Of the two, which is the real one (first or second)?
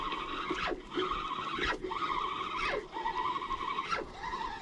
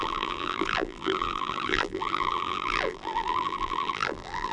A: first